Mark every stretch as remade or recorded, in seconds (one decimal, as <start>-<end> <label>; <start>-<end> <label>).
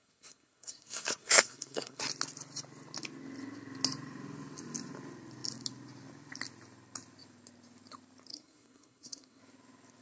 0.0-2.0 remade; 2.0-8.3 recorded; 8.3-9.4 remade; 9.4-10.0 recorded